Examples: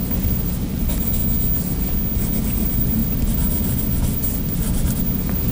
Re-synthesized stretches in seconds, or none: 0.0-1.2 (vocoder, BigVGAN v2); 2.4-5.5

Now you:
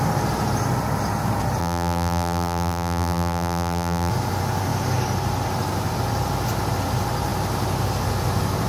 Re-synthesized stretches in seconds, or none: 1.6-4.1 (vocoder, BigVGAN v2)